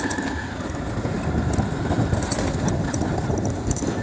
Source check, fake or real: real